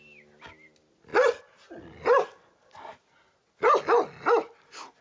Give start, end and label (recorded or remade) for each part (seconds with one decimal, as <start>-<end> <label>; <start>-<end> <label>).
0.0-5.0 recorded